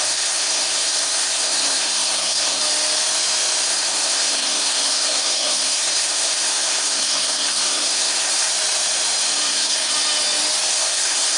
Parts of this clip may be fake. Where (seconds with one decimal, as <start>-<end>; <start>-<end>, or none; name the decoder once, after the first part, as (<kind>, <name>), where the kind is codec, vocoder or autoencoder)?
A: 0.0-2.6 (codec, SNAC); 3.6-8.5; 9.5-9.9; 10.7-11.4